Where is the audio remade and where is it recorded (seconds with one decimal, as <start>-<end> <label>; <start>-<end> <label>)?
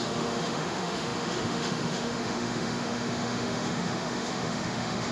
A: 0.0-5.1 remade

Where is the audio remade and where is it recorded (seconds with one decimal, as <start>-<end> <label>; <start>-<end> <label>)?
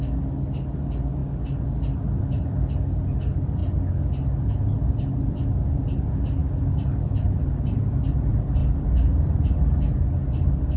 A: 0.0-10.8 recorded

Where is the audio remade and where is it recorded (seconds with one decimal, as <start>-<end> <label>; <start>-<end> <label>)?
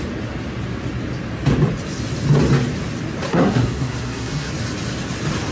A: 0.0-3.3 recorded; 3.3-4.5 remade; 4.5-5.5 recorded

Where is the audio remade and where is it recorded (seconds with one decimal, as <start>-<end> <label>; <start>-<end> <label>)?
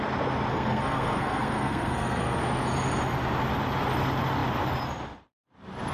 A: 0.0-0.5 recorded; 0.5-2.4 remade; 2.4-5.9 recorded